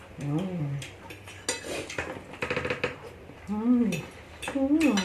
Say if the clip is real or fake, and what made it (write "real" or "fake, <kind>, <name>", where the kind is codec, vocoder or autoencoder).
real